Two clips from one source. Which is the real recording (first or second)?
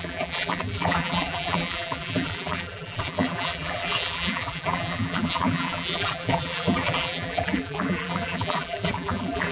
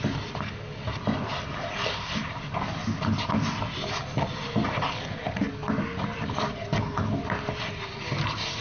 second